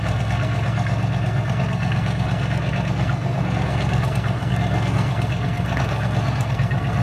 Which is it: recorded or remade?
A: remade